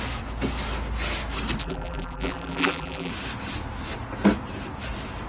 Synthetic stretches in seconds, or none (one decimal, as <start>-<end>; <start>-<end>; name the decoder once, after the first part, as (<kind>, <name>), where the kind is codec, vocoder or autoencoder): 1.6-3.1 (vocoder, BigVGAN v2)